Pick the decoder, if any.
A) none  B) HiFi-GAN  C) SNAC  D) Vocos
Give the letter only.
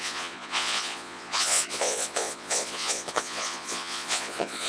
D